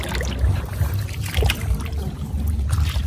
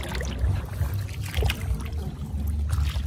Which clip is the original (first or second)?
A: second